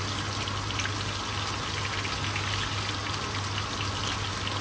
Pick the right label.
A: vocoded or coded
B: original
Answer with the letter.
B